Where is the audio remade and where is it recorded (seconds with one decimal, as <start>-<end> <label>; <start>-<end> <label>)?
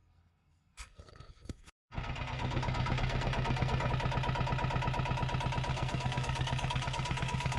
0.0-3.9 remade; 3.9-5.7 recorded; 5.7-7.6 remade